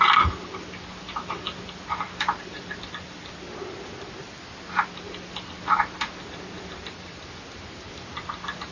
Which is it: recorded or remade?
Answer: recorded